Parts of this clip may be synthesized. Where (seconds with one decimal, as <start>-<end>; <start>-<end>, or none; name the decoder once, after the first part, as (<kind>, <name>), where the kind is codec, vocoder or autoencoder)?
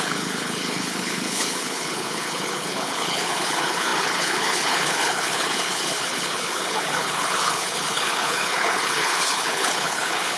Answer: 0.0-10.4 (codec, HILCodec)